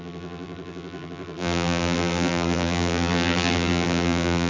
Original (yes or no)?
no